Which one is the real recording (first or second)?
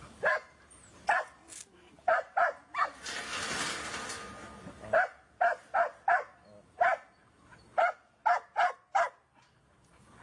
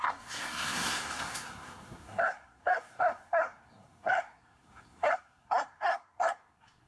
first